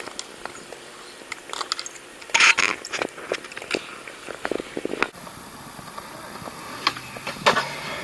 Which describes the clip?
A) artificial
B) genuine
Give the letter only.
B